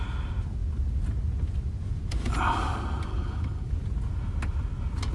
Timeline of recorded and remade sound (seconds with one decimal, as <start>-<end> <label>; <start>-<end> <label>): 0.0-3.1 recorded; 3.1-3.7 remade; 3.7-5.1 recorded